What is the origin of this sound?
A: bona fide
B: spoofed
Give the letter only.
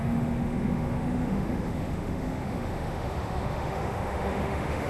B